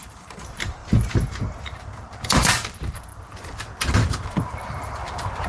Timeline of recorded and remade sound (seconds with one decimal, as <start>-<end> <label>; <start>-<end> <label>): 0.0-0.8 remade; 0.8-1.6 recorded; 1.6-3.1 remade; 3.1-4.1 recorded; 4.1-5.5 remade